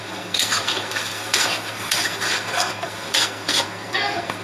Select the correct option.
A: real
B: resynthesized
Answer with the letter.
B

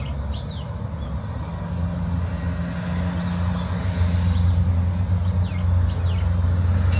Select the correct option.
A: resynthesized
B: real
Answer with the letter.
B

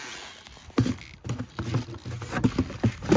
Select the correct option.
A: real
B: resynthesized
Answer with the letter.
A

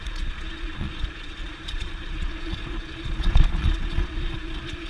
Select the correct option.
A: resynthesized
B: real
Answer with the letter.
A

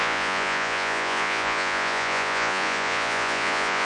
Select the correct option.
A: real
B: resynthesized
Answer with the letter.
B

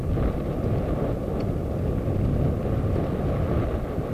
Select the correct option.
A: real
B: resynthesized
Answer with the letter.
A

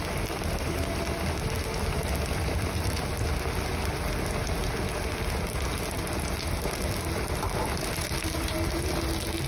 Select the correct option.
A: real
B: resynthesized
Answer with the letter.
A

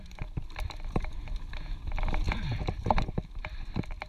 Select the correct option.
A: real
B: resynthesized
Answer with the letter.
B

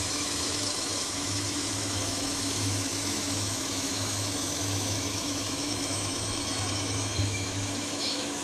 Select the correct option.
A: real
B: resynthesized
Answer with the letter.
B